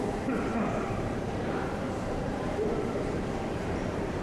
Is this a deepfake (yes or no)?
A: yes